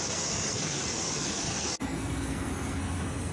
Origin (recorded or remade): remade